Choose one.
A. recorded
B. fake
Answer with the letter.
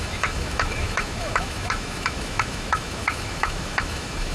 B